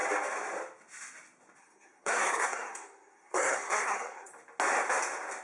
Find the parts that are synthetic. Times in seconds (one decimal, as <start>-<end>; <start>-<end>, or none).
1.6-4.3